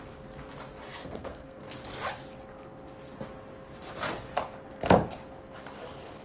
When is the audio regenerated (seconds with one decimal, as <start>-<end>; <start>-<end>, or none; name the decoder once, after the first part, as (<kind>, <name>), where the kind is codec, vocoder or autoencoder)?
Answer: 1.0-1.6 (codec, SNAC)

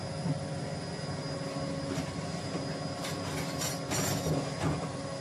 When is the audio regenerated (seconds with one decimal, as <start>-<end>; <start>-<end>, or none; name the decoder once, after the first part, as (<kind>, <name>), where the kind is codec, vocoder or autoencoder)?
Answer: none

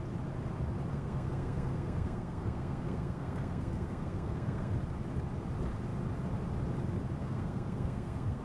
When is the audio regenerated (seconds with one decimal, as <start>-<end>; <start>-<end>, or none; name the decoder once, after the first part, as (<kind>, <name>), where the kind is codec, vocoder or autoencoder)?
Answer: 0.9-4.7 (codec, SNAC); 7.2-8.4

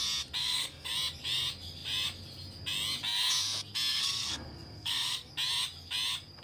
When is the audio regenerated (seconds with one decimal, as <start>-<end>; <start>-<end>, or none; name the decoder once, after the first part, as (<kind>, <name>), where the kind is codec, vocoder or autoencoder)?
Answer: 0.4-0.9 (codec, SNAC); 3.9-5.3

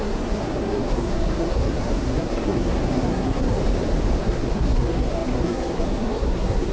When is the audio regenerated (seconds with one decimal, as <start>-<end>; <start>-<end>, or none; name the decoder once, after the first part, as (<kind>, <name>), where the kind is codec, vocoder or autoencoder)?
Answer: 0.0-3.6 (codec, SNAC); 4.2-6.7

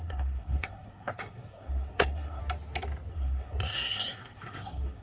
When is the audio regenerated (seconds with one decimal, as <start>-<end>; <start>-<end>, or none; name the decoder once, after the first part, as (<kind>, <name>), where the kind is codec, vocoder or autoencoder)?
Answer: 0.0-2.4 (codec, SNAC); 3.1-5.0

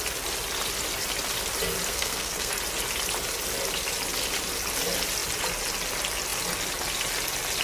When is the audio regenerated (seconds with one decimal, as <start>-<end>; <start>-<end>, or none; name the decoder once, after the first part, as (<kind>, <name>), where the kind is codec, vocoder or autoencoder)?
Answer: 1.9-2.5 (codec, SNAC)